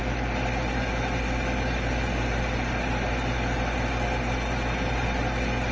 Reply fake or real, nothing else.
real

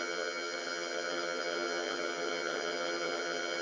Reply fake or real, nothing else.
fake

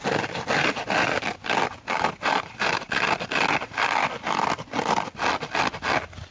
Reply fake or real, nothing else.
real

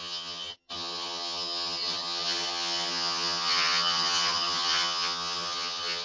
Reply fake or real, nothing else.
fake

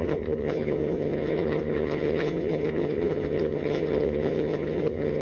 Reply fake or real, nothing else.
fake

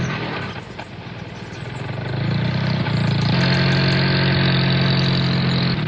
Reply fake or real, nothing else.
real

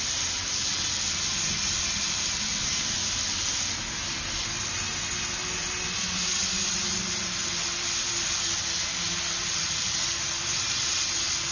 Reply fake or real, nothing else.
real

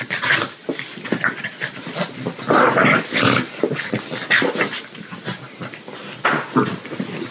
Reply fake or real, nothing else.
real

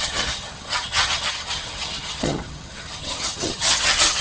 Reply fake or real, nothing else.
fake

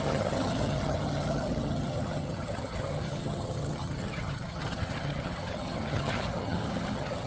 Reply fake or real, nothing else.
fake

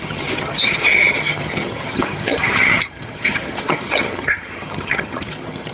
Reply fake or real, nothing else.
fake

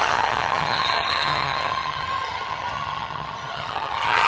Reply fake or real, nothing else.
fake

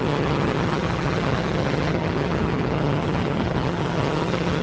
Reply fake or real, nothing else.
fake